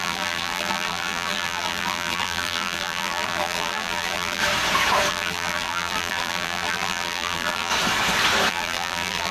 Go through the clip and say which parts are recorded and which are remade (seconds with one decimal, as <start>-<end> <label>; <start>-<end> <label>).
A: 0.0-4.4 remade; 4.4-5.1 recorded; 5.1-7.7 remade; 7.7-8.5 recorded; 8.5-9.3 remade